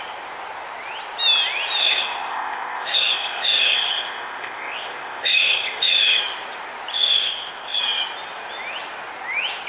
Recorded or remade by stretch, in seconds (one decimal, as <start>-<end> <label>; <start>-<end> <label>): 0.0-1.8 recorded; 1.8-6.2 remade; 6.2-6.9 recorded; 6.9-7.8 remade; 7.8-9.7 recorded